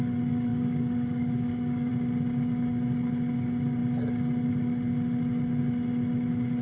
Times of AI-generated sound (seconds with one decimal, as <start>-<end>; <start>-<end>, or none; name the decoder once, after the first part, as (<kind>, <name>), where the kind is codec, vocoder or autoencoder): 0.5-1.9 (codec, DAC)